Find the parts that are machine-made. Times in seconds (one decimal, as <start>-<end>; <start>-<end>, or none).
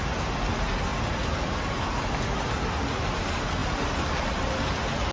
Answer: none